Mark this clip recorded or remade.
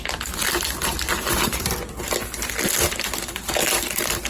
remade